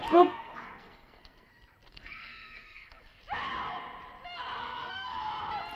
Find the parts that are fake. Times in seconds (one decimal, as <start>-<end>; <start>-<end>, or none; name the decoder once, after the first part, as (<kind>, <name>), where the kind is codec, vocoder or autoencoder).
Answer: 0.0-1.5 (codec, SNAC); 1.9-3.2; 4.6-5.3